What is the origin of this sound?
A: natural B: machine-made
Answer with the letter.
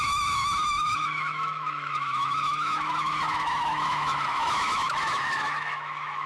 B